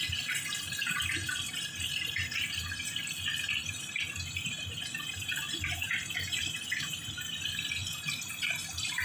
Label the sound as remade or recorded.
remade